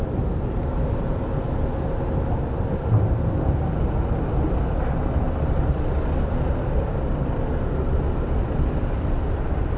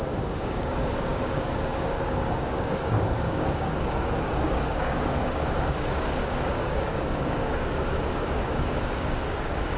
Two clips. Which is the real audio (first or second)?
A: first